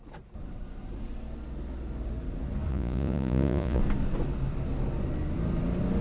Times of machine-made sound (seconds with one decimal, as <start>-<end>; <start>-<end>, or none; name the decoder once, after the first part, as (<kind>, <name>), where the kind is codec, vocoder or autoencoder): 2.7-3.8 (vocoder, Vocos)